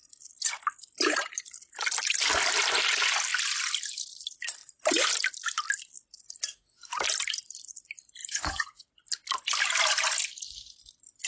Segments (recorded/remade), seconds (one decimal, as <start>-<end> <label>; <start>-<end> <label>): 0.0-8.2 recorded; 8.2-8.8 remade; 8.8-11.3 recorded